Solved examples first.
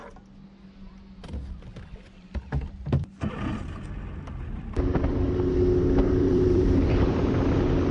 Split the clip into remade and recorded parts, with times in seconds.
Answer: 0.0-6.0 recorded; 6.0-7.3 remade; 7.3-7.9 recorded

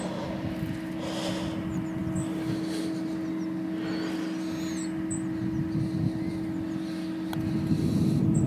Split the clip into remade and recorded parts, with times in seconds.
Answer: 0.0-8.5 recorded

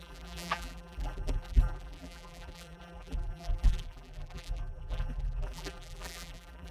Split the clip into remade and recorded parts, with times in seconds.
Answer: 0.0-6.7 remade